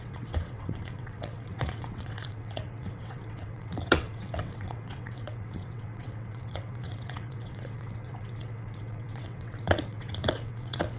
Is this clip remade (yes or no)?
yes